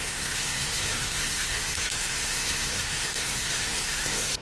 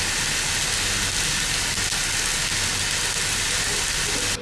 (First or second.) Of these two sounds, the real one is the second